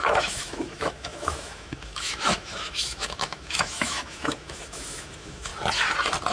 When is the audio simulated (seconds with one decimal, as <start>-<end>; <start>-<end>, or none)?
0.0-5.5